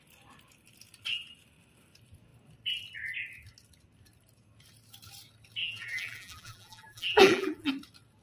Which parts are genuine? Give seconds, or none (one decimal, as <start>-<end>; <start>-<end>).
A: 0.0-5.6; 7.7-8.2